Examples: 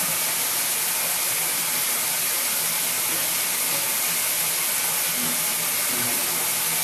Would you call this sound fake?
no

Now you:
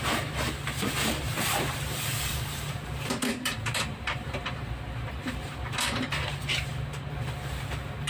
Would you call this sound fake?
yes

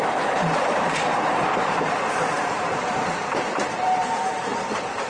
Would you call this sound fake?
yes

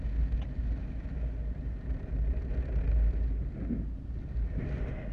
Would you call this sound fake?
no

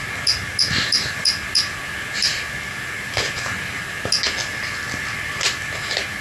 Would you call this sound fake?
no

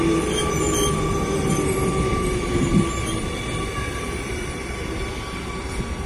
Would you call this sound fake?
no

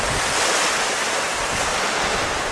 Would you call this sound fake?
no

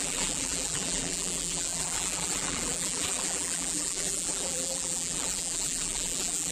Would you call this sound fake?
yes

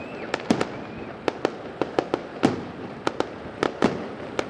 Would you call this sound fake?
no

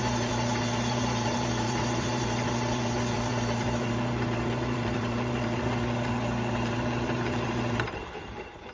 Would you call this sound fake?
yes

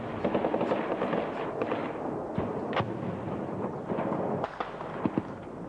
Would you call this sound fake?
no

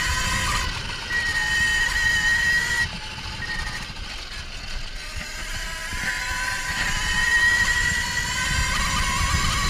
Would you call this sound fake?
no